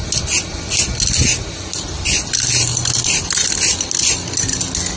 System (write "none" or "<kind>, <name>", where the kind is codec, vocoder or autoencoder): none